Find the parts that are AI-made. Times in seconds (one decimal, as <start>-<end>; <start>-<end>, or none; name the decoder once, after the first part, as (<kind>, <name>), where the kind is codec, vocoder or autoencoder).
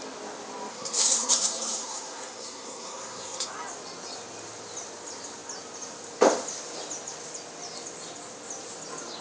0.7-3.5 (codec, SNAC)